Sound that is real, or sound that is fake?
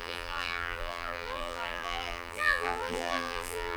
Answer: fake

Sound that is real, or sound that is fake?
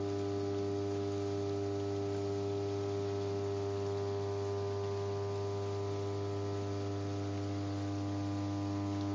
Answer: real